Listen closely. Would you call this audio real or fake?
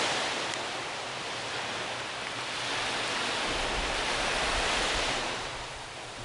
real